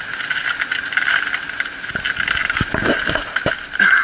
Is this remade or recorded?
recorded